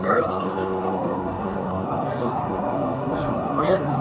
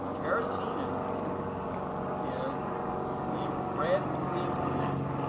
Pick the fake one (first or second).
first